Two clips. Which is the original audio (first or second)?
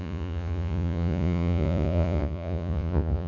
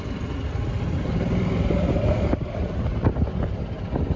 second